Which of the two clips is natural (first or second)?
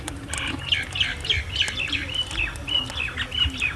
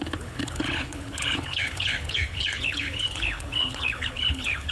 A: first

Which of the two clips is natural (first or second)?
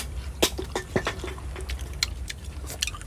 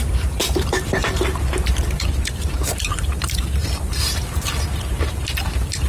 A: first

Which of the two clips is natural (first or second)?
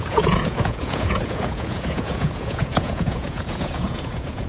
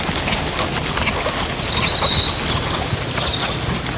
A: second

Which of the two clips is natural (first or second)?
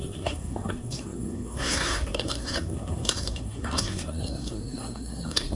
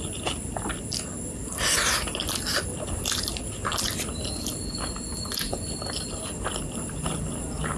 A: second